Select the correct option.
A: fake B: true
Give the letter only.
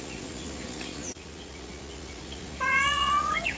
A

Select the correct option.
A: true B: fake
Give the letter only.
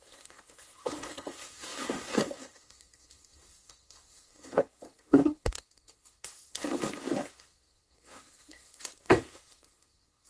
B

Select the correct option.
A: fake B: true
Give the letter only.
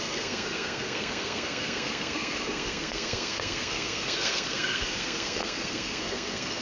A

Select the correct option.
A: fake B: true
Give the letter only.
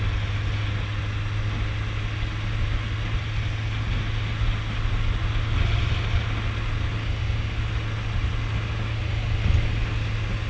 B